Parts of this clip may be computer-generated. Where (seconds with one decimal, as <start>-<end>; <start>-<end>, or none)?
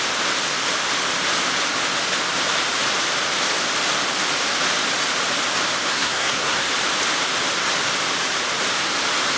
5.9-6.7